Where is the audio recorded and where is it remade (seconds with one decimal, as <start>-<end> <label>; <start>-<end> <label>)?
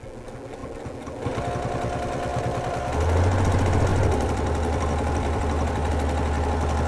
0.0-2.3 recorded; 2.3-2.9 remade; 2.9-3.9 recorded; 3.9-5.9 remade; 5.9-6.9 recorded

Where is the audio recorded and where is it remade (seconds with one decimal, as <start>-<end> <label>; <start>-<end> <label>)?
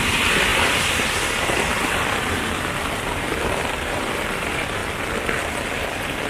0.0-4.8 remade; 4.8-6.3 recorded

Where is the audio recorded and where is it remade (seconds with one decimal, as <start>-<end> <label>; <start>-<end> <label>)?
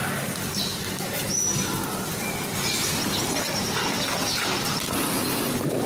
0.0-0.5 recorded; 0.5-1.8 remade; 1.8-4.3 recorded; 4.3-5.9 remade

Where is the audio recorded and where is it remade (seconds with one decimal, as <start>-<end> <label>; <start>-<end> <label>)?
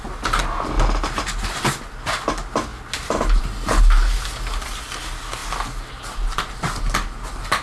0.0-7.6 recorded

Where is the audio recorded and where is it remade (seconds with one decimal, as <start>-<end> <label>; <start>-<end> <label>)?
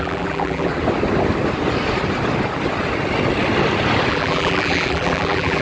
0.0-0.7 remade; 0.7-4.1 recorded; 4.1-5.6 remade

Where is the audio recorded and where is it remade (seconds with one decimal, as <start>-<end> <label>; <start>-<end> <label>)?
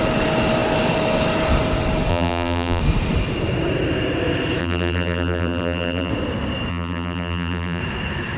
0.0-2.1 recorded; 2.1-2.8 remade; 2.8-4.6 recorded; 4.6-6.1 remade; 6.1-6.7 recorded; 6.7-7.8 remade; 7.8-8.4 recorded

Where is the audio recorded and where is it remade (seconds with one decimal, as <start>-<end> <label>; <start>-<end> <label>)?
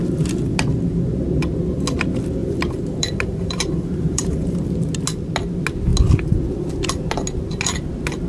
0.0-2.4 recorded; 2.4-4.7 remade; 4.7-8.3 recorded